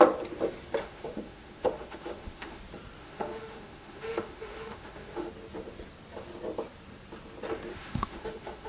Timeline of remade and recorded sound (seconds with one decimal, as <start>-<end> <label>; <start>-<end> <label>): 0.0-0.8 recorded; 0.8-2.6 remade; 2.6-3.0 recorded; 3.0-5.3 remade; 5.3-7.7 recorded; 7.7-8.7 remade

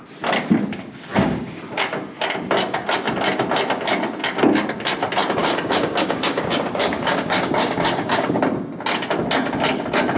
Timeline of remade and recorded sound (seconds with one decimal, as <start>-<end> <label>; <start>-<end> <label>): 0.0-1.1 recorded; 1.1-1.8 remade; 1.8-5.4 recorded; 5.4-8.4 remade; 8.4-10.2 recorded

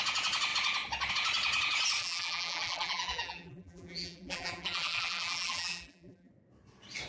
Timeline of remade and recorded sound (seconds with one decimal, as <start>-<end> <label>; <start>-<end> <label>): 0.0-2.0 recorded; 2.0-6.3 remade; 6.3-7.1 recorded

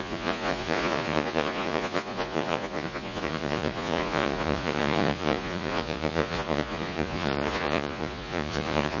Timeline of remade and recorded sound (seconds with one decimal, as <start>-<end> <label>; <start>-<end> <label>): 0.0-9.0 remade

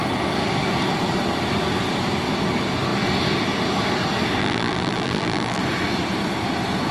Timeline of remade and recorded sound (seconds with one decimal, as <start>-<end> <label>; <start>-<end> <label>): 0.0-4.4 recorded; 4.4-5.6 remade; 5.6-6.9 recorded

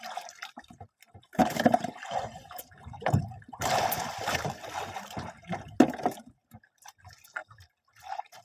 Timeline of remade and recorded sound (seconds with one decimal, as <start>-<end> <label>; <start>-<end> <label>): 0.0-1.4 recorded; 1.4-3.2 remade; 3.2-8.4 recorded

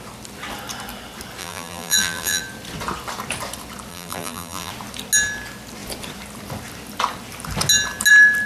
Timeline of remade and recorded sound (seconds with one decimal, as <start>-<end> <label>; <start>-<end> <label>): 0.0-1.4 recorded; 1.4-2.4 remade; 2.4-3.9 recorded; 3.9-4.7 remade; 4.7-8.5 recorded

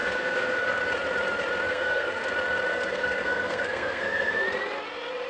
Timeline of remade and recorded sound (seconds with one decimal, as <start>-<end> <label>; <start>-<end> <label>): 0.0-0.8 remade; 0.8-1.7 recorded; 1.7-2.3 remade; 2.3-2.7 recorded; 2.7-4.4 remade; 4.4-5.3 recorded